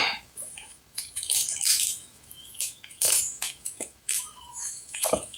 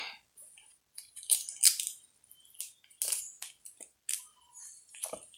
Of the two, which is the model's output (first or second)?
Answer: first